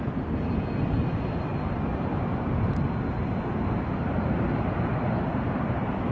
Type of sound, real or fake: real